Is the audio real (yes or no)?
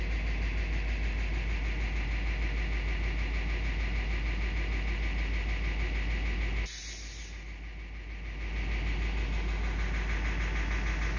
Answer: yes